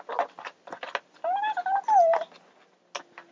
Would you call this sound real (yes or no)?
yes